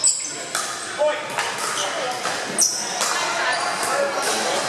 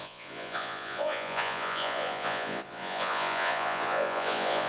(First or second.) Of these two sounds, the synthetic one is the second